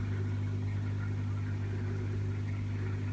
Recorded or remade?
recorded